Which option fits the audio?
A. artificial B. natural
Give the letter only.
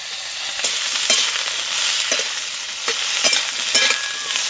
B